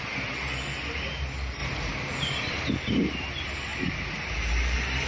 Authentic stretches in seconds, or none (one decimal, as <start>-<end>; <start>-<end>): 0.0-5.1